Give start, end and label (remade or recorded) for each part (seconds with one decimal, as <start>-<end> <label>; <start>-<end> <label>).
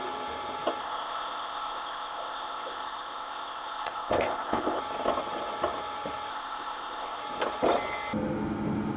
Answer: 0.0-0.8 recorded; 0.8-4.8 remade; 4.8-6.3 recorded; 6.3-7.2 remade; 7.2-9.0 recorded